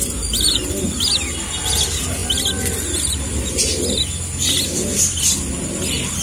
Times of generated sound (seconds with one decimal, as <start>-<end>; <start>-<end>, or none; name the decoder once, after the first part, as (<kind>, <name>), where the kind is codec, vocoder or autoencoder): none